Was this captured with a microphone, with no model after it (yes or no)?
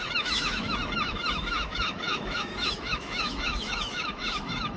no